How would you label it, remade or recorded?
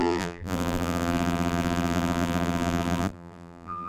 remade